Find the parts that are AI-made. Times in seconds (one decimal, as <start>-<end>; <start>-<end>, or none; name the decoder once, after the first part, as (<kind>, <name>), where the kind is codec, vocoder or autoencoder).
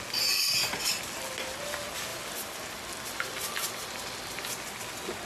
2.1-4.8 (vocoder, BigVGAN v2)